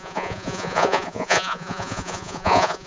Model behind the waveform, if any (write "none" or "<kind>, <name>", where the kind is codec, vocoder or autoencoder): vocoder, Vocos